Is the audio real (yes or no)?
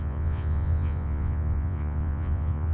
no